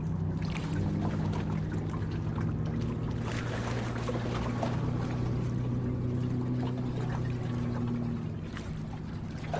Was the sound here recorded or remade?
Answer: recorded